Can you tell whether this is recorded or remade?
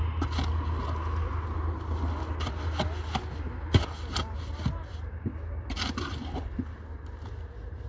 recorded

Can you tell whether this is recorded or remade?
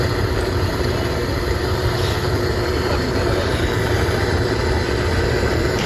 remade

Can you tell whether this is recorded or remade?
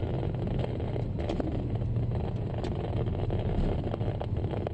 recorded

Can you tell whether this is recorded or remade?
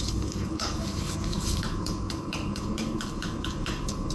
remade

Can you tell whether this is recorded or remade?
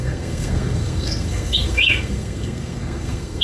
remade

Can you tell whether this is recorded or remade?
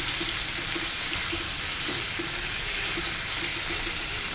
recorded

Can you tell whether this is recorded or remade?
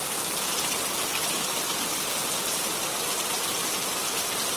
remade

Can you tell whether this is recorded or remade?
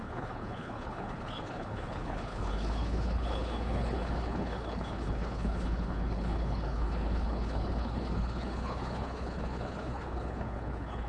remade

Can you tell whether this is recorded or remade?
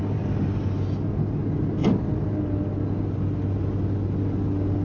recorded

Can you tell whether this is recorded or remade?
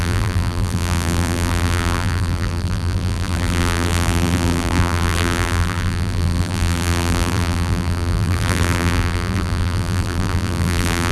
remade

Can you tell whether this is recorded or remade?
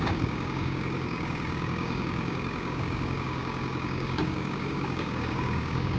remade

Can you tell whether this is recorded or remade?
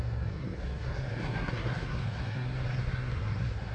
remade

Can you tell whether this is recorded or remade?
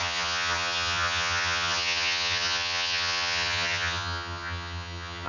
remade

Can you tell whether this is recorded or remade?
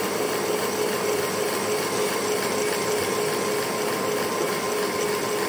recorded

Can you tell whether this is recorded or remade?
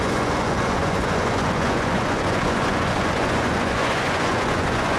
remade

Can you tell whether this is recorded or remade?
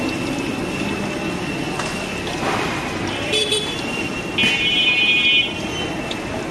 remade